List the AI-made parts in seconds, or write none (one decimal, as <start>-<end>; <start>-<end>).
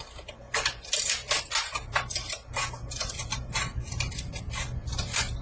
1.2-4.4